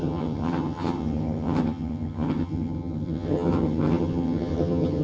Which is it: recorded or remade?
remade